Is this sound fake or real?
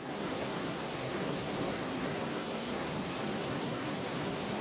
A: fake